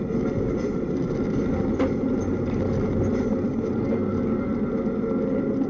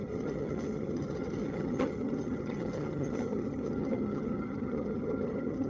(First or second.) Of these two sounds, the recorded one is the first